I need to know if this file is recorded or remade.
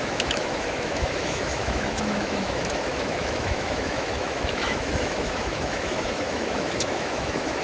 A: remade